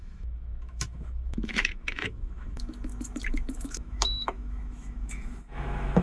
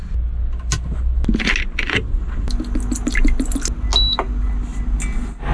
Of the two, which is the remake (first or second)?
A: first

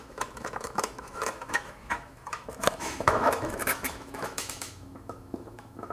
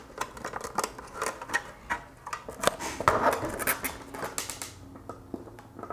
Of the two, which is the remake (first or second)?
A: first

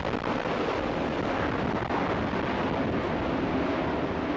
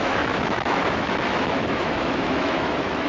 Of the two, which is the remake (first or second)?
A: second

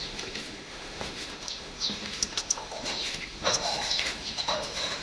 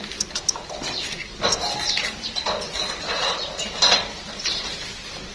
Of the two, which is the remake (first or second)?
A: first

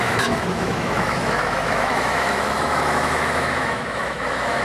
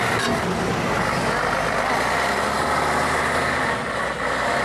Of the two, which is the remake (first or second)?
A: first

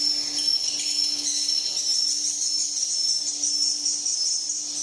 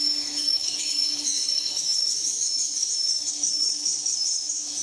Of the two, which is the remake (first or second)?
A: second